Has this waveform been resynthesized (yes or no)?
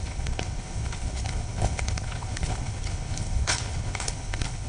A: yes